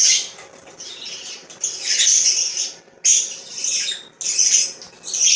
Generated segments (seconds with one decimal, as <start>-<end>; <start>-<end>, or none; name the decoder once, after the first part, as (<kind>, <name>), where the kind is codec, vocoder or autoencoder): 1.4-2.6 (vocoder, BigVGAN v2); 3.1-4.2